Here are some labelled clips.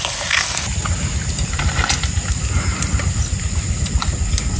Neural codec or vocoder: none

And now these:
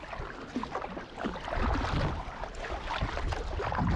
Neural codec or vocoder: none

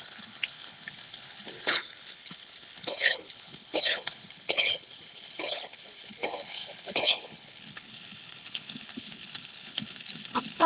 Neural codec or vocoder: codec, HILCodec